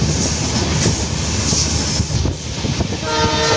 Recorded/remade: recorded